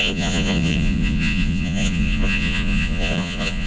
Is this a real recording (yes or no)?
no